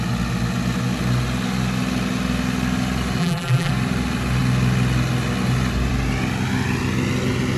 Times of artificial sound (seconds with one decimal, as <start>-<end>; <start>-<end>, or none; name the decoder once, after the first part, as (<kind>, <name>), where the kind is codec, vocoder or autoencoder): 3.2-3.7 (vocoder, BigVGAN v2)